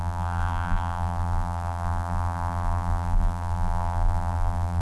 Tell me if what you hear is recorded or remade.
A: remade